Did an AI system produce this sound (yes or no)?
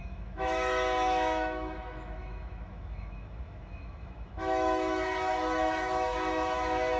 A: yes